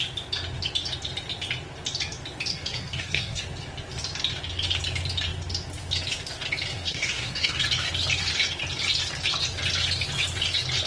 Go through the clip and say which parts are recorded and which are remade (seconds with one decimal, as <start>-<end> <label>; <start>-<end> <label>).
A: 0.0-2.5 recorded; 2.5-3.4 remade; 3.4-6.7 recorded; 6.7-7.6 remade; 7.6-10.9 recorded